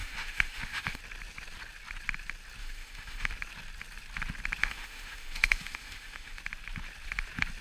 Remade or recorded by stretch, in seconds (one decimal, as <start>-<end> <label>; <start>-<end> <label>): 0.0-1.0 remade; 1.0-2.6 recorded; 2.6-3.3 remade; 3.3-4.6 recorded; 4.6-6.4 remade; 6.4-7.6 recorded